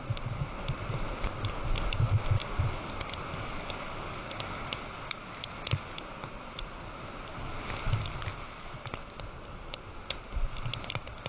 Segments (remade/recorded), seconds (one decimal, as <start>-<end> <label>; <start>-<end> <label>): 0.0-11.3 recorded